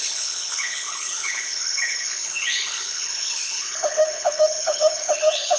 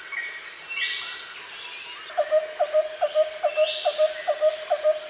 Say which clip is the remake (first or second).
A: first